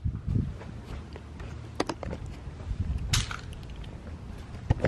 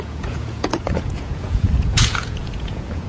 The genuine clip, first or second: first